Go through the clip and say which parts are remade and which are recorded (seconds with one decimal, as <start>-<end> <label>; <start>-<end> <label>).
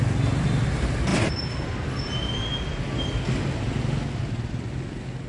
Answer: 0.0-5.3 recorded